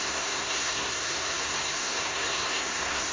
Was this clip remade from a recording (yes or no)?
yes